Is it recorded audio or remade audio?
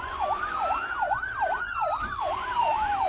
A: remade